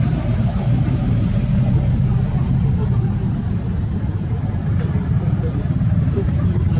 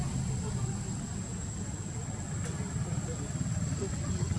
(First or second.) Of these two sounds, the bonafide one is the second